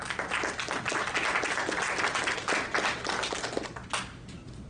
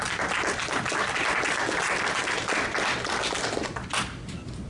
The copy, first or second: second